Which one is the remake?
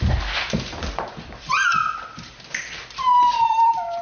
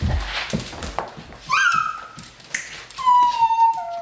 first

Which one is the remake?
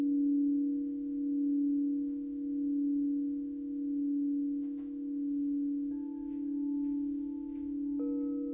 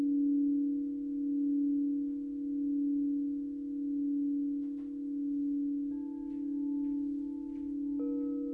first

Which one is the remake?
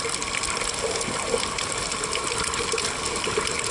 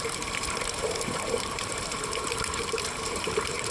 second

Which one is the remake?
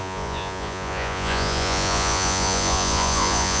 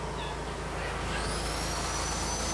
first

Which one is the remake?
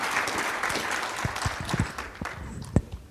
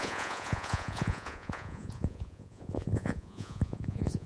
second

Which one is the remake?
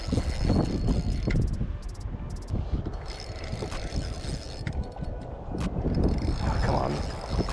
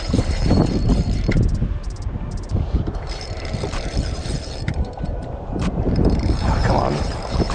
second